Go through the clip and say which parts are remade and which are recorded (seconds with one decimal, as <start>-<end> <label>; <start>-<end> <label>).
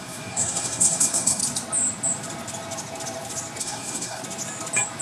0.0-1.4 remade; 1.4-3.6 recorded; 3.6-4.2 remade; 4.2-5.0 recorded